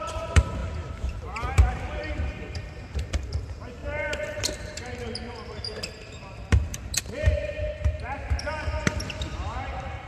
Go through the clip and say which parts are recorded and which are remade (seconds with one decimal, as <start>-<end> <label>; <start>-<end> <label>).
0.0-10.1 remade